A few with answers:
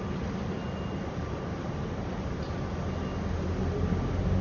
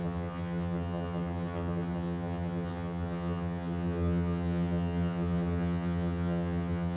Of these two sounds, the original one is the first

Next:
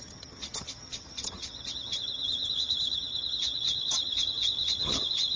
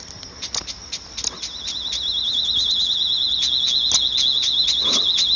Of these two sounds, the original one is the second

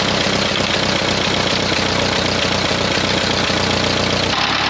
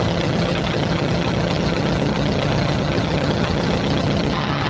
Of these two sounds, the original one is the first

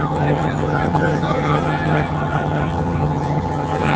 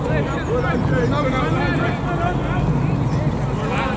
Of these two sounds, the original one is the second